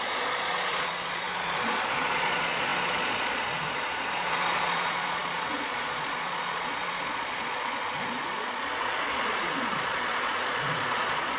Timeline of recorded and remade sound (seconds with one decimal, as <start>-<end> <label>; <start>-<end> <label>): 0.0-11.4 remade